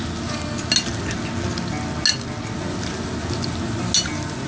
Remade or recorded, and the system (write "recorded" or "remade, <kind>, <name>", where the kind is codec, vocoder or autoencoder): recorded